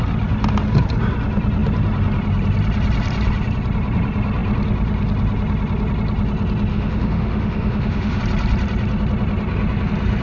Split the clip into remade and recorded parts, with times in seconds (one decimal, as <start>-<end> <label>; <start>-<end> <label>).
0.0-6.7 recorded; 6.7-8.2 remade; 8.2-10.2 recorded